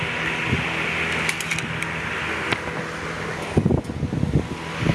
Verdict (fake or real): real